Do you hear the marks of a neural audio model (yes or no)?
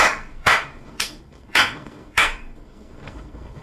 yes